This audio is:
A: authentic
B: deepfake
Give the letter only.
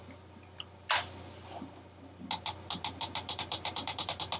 A